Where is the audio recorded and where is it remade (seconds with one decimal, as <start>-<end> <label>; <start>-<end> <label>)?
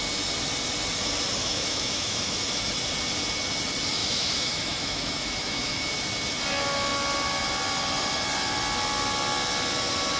0.0-1.4 recorded; 1.4-2.7 remade; 2.7-4.0 recorded; 4.0-5.9 remade; 5.9-10.2 recorded